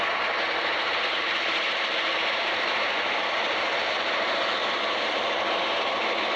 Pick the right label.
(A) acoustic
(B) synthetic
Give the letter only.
B